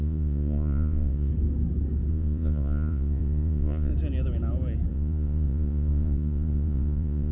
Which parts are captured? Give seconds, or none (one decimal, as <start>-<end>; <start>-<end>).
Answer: 1.3-2.1; 3.9-4.9